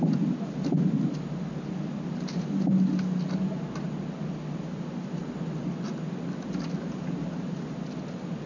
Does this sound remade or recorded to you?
recorded